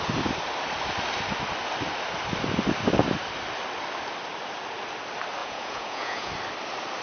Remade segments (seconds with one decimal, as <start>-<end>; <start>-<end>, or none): 5.4-6.3